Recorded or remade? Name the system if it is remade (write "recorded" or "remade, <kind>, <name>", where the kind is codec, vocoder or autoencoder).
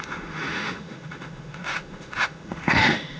remade, autoencoder, DAC-VAE